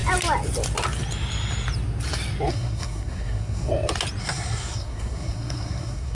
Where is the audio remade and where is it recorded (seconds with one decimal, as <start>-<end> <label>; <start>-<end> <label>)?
0.0-2.5 recorded; 2.5-3.7 remade; 3.7-4.2 recorded; 4.2-6.1 remade